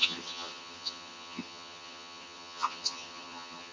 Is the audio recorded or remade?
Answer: remade